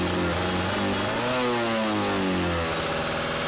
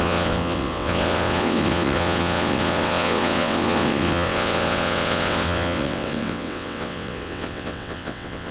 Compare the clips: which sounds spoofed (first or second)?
second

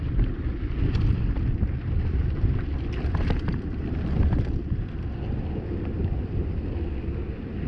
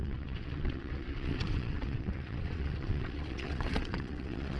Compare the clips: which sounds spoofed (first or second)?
second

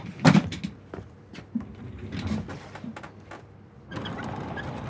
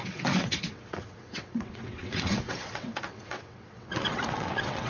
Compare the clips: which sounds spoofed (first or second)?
second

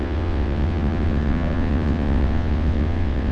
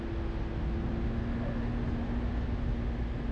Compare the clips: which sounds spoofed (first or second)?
first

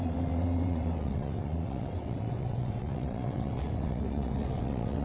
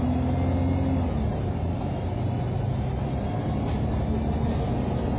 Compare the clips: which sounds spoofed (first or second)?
first